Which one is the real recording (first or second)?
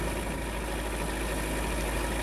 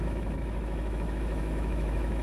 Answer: first